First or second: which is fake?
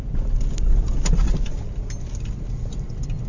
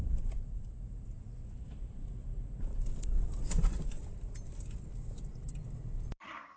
second